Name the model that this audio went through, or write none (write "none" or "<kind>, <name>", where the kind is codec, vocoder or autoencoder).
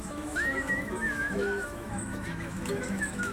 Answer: autoencoder, DAC-VAE